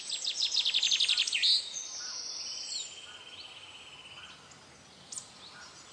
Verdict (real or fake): real